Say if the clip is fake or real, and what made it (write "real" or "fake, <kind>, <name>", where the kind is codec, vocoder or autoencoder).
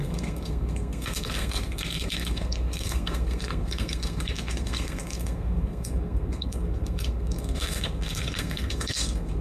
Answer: fake, codec, SNAC